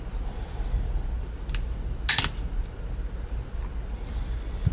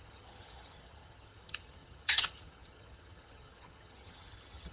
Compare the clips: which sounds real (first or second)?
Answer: first